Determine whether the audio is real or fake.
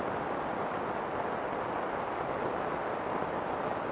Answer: real